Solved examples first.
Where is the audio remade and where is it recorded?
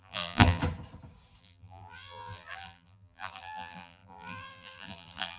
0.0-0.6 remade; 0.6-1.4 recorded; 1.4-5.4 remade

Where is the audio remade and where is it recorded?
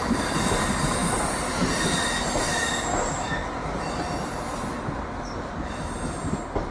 0.0-6.7 recorded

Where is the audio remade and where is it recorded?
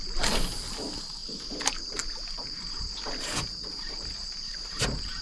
0.0-5.2 recorded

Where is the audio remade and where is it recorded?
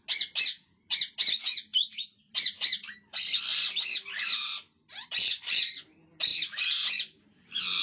0.0-1.7 recorded; 1.7-2.9 remade; 2.9-3.5 recorded; 3.5-5.8 remade; 5.8-6.3 recorded; 6.3-7.8 remade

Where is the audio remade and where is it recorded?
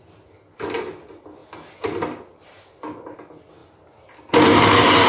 0.0-5.1 recorded